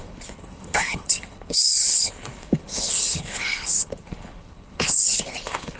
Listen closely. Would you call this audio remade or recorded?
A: remade